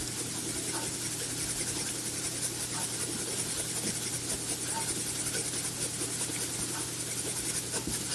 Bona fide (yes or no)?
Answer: yes